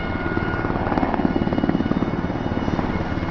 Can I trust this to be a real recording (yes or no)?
yes